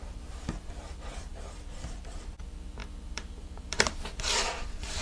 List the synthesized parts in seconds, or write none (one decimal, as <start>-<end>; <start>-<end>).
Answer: 0.0-5.0